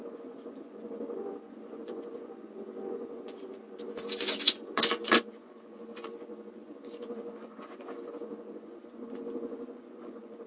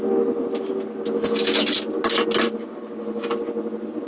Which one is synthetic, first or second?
first